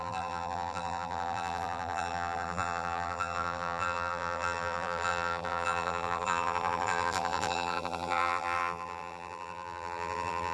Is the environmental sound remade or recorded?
remade